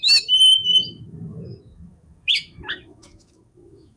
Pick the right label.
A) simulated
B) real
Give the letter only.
A